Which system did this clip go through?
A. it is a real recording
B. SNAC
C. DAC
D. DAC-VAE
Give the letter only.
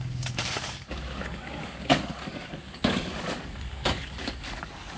C